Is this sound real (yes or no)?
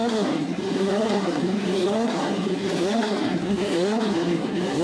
no